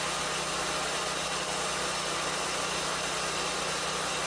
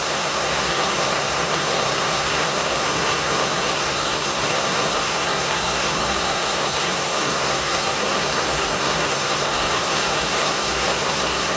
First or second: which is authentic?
first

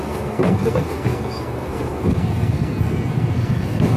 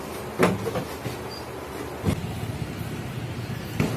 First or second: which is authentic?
second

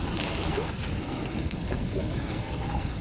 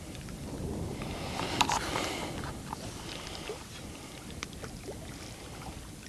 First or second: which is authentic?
second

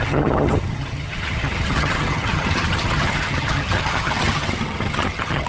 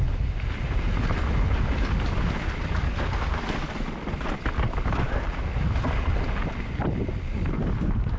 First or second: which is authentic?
second